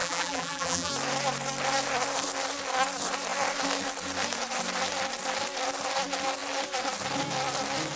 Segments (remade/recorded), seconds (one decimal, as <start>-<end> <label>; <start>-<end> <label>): 0.0-0.9 remade; 0.9-8.0 recorded